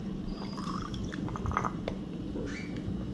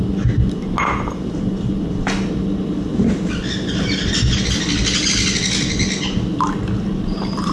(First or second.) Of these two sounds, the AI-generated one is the first